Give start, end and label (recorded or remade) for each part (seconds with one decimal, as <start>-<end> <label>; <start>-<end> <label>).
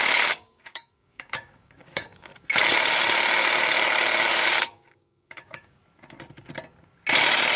0.0-2.3 remade; 2.3-4.3 recorded; 4.3-5.8 remade; 5.8-7.6 recorded